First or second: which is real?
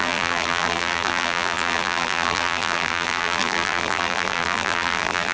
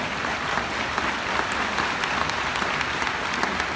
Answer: second